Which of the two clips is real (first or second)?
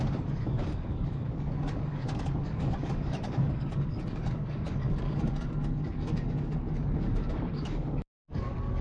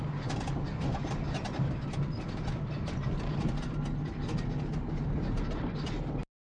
second